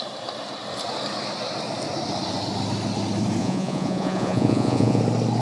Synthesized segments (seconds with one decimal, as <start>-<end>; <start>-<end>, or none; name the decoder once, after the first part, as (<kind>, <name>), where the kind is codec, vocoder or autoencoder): 3.4-5.0 (vocoder, Vocos)